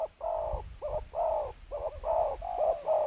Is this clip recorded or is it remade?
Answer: recorded